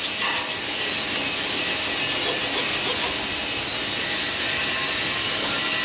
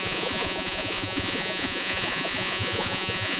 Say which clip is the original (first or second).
first